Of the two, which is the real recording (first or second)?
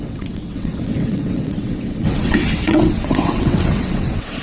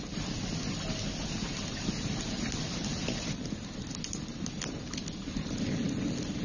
second